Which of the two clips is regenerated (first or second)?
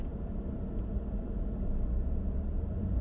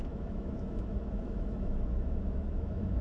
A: second